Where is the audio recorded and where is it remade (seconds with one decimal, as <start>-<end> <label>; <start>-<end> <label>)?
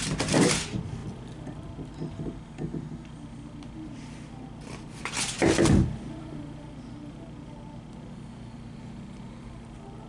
0.0-10.1 recorded